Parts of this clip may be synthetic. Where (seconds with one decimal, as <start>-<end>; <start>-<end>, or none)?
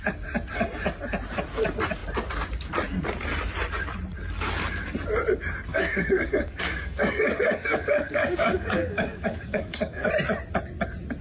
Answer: 5.7-10.1